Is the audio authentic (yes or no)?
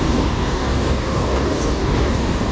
no